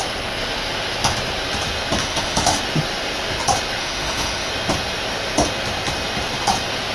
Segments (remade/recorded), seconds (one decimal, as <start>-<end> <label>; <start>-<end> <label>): 0.0-2.0 recorded; 2.0-2.6 remade; 2.6-3.8 recorded; 3.8-4.5 remade; 4.5-6.9 recorded